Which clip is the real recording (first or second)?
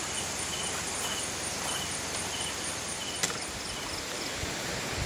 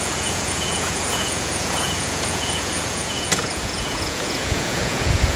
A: first